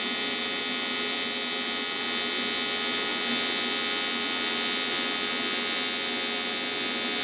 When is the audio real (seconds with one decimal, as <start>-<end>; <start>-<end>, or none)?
0.0-7.2